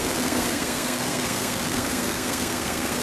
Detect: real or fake fake